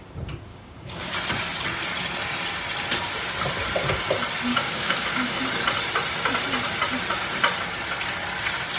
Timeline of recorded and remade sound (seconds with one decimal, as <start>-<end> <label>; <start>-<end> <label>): 0.0-0.5 recorded; 0.5-1.1 remade; 1.1-4.5 recorded; 4.5-5.4 remade; 5.4-8.8 recorded

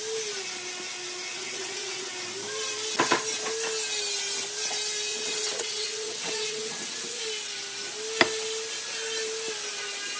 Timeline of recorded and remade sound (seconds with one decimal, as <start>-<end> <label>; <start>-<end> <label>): 0.0-1.3 recorded; 1.3-2.1 remade; 2.1-5.1 recorded; 5.1-7.2 remade; 7.2-10.2 recorded